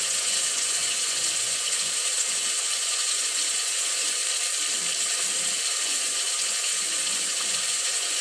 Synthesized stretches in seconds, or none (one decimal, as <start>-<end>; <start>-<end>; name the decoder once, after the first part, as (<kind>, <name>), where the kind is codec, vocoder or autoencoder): 0.0-4.2 (vocoder, Vocos); 5.8-8.2